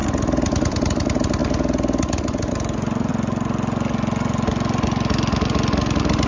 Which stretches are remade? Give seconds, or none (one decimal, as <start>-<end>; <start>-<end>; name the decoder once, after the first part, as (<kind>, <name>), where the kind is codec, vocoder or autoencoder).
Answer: 0.7-1.4 (vocoder, BigVGAN v2); 2.5-3.1